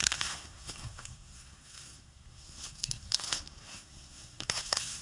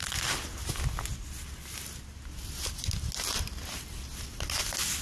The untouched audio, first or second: second